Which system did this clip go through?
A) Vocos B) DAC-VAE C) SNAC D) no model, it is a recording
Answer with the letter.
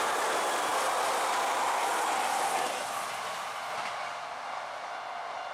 D